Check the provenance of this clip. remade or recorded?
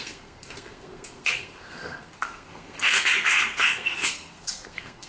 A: remade